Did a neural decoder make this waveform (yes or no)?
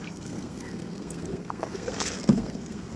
yes